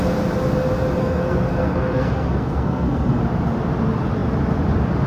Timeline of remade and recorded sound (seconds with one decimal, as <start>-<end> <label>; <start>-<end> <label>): 0.0-1.0 recorded; 1.0-3.2 remade; 3.2-5.1 recorded